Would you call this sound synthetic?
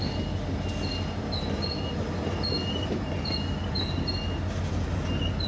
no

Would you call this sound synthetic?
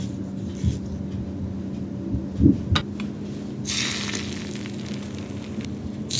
no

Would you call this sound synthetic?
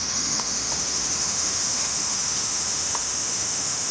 yes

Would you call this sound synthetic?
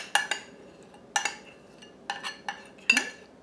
no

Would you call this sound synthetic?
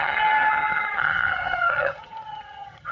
yes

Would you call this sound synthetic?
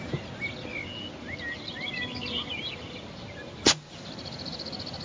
no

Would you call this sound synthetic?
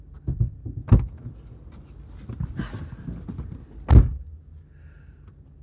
no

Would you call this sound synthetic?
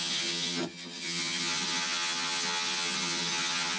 yes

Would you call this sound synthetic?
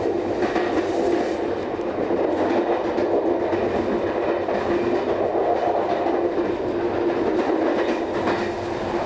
no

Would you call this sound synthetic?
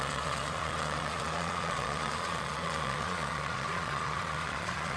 yes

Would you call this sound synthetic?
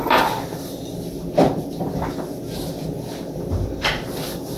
no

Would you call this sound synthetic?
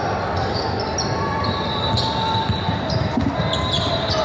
no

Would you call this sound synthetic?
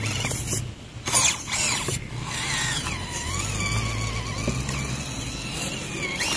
no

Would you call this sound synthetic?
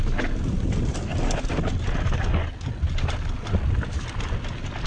no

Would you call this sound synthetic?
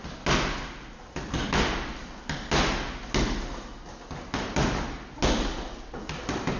no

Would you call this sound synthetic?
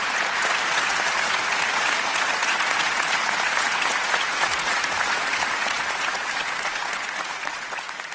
yes